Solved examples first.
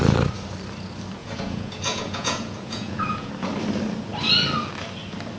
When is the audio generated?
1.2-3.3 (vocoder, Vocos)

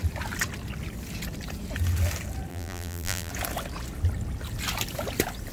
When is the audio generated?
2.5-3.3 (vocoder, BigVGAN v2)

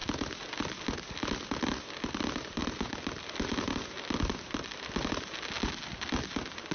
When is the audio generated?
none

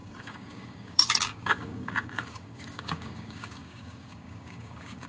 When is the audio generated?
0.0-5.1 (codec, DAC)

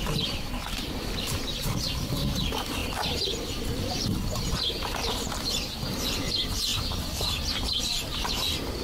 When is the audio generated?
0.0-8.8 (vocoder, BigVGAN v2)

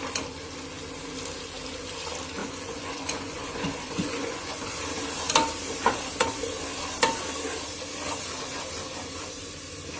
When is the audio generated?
2.4-4.8 (vocoder, Vocos)

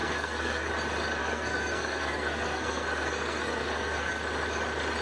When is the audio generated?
0.0-0.7 (codec, SNAC); 1.2-4.1

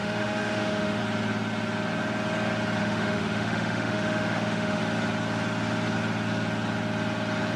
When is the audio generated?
0.0-1.0 (autoencoder, DAC-VAE); 2.8-4.8